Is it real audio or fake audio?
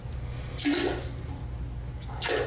real